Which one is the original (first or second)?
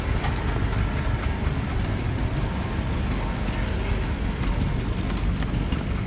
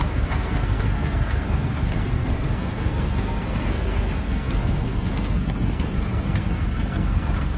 first